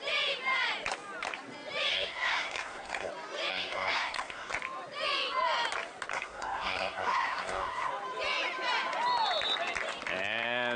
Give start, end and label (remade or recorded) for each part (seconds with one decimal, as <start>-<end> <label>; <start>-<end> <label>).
0.0-1.9 recorded; 1.9-3.1 remade; 3.1-3.5 recorded; 3.5-4.5 remade; 4.5-6.1 recorded; 6.1-7.9 remade; 7.9-10.8 recorded